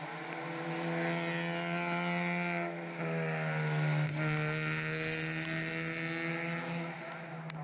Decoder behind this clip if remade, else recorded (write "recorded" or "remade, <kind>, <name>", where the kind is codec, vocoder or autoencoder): recorded